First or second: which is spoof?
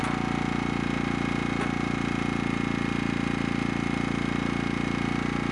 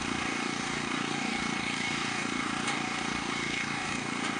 second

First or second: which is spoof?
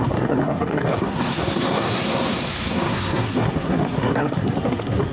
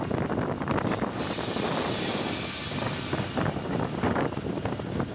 first